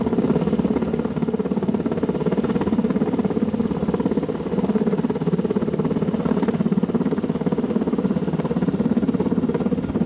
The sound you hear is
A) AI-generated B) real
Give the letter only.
B